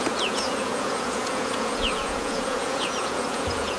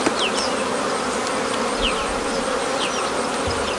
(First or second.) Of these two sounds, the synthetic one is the first